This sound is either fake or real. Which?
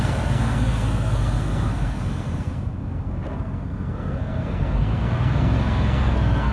fake